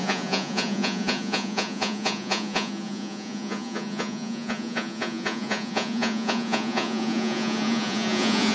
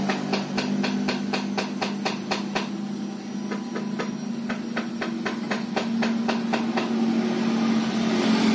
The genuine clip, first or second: second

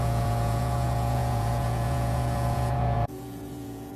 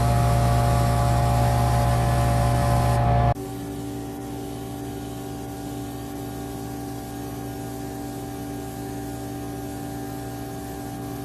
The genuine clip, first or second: second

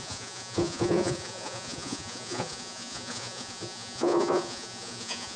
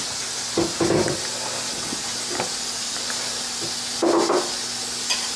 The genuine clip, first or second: second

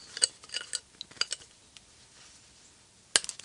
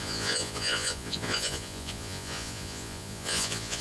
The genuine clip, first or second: first